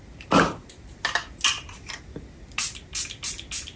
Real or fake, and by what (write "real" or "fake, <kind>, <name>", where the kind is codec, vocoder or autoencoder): real